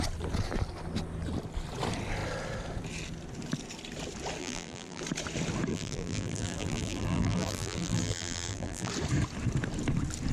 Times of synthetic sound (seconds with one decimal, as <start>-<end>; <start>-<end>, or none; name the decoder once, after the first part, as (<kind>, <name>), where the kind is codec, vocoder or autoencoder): 4.4-5.0 (vocoder, BigVGAN v2); 5.7-8.9